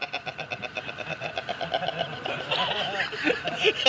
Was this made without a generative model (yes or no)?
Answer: yes